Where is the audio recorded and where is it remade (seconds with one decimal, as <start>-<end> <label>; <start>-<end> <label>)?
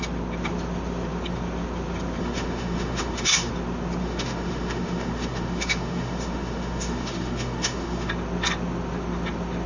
0.0-2.2 recorded; 2.2-3.5 remade; 3.5-4.0 recorded; 4.0-8.1 remade; 8.1-9.7 recorded